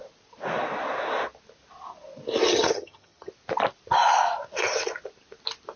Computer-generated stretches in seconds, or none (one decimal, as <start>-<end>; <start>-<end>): 2.5-3.3